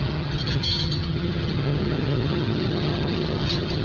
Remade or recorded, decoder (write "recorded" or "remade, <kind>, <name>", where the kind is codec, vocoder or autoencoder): remade, vocoder, HiFi-GAN